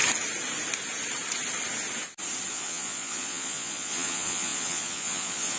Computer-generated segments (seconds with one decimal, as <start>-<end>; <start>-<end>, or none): 2.5-5.6